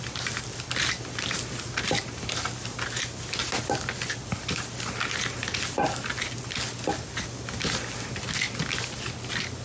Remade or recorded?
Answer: recorded